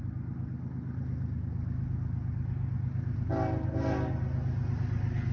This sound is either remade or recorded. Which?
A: recorded